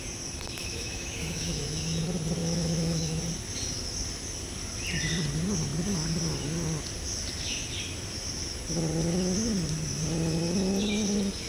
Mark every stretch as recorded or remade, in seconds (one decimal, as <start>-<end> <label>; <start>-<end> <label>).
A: 0.0-0.6 recorded; 0.6-2.0 remade; 2.0-2.4 recorded; 2.4-3.2 remade; 3.2-11.5 recorded